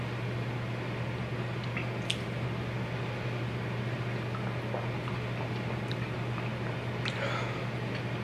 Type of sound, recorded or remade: recorded